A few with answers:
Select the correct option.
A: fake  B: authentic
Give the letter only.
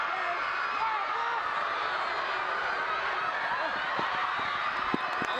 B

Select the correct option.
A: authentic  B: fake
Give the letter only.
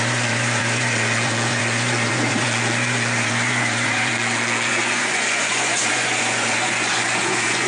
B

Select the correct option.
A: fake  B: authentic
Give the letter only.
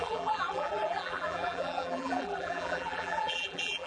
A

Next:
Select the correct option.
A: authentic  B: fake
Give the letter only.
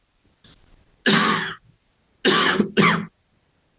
A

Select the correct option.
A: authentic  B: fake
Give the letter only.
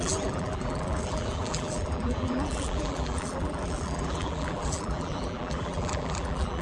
B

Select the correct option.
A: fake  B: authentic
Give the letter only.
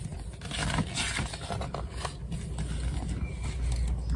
B